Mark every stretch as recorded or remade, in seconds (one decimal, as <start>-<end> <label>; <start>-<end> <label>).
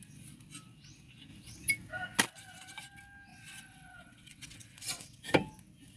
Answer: 0.0-3.3 recorded; 3.3-5.2 remade; 5.2-6.0 recorded